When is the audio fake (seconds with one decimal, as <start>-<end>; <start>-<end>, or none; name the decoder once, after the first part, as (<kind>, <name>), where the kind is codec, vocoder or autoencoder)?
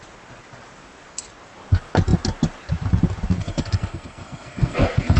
3.4-5.2 (codec, SNAC)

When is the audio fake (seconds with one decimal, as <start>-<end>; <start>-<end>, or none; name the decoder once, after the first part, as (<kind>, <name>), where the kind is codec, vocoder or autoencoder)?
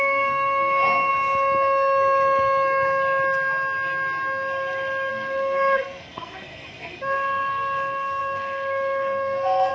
0.0-1.1 (codec, SNAC); 5.1-9.7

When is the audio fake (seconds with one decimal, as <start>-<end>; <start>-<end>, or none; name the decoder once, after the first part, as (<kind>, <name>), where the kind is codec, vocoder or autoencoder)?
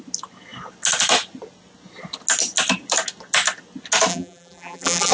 4.1-5.1 (vocoder, BigVGAN v2)